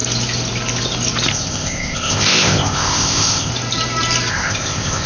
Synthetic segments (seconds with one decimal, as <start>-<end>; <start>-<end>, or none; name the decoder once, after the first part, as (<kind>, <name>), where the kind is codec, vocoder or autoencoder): 1.3-3.5 (codec, ZipCodec); 4.3-5.1